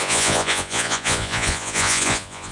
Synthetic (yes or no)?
yes